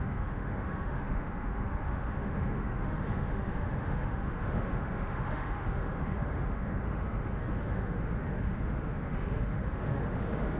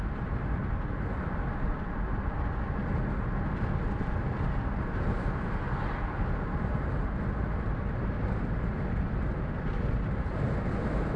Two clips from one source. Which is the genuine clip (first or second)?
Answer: second